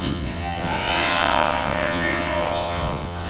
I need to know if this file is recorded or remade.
remade